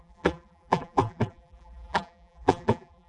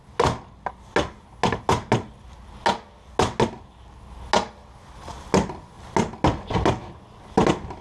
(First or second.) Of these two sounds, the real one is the second